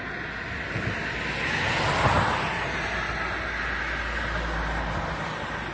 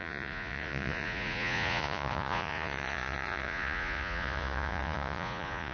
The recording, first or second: first